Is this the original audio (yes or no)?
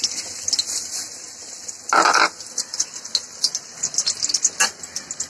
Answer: yes